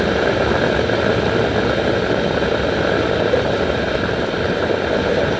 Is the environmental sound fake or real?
real